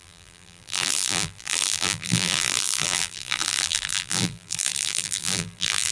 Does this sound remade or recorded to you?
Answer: remade